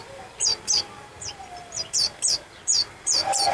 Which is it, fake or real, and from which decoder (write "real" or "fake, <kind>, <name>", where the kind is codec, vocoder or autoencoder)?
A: fake, vocoder, BigVGAN v2